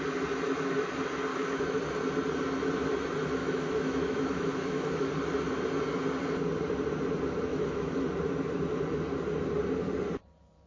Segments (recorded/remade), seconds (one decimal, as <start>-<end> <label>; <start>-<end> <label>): 0.0-1.3 recorded; 1.3-1.8 remade; 1.8-3.4 recorded; 3.4-5.1 remade; 5.1-7.5 recorded; 7.5-8.1 remade; 8.1-10.7 recorded